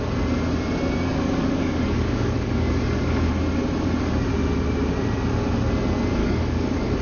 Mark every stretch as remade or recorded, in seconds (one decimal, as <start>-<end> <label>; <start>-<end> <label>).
0.0-1.1 recorded; 1.1-3.3 remade; 3.3-6.2 recorded; 6.2-7.0 remade